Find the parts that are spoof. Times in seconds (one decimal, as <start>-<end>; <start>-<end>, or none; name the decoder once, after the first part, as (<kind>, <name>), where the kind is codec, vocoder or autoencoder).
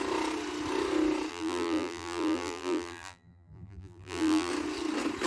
1.3-4.5 (vocoder, BigVGAN v2)